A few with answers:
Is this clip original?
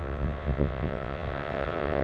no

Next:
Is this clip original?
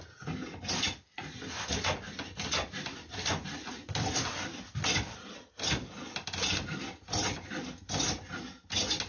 yes